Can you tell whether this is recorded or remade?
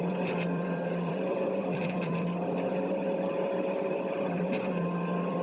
remade